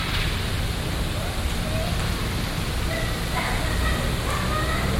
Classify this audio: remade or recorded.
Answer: recorded